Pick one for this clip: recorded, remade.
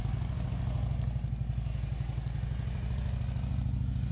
recorded